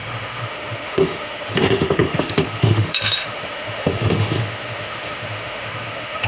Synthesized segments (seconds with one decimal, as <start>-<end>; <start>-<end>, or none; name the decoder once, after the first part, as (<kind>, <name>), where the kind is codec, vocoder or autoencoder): 0.0-6.3 (autoencoder, DAC-VAE)